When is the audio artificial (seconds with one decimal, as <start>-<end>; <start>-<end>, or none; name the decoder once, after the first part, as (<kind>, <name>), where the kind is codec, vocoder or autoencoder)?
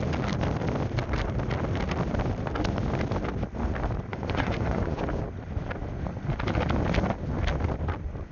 4.1-5.0 (vocoder, Vocos)